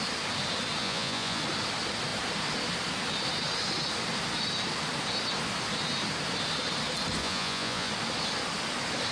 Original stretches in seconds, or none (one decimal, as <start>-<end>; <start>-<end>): 0.0-0.8; 1.4-7.2; 7.9-9.1

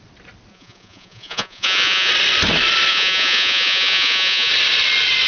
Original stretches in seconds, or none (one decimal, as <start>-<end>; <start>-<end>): 0.0-0.5; 2.1-2.9; 4.5-5.3

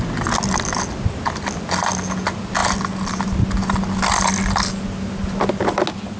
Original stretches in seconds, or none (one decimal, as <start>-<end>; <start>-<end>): 0.0-6.2

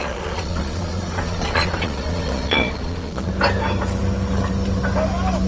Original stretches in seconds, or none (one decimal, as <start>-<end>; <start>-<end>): 3.3-5.5

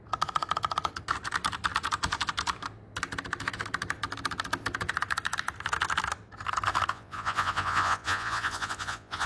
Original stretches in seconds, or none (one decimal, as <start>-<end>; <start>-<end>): 0.0-6.9

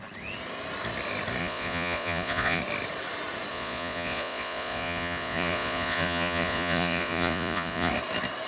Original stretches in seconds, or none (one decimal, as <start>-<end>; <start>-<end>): 0.0-1.4; 2.6-3.5; 7.9-8.5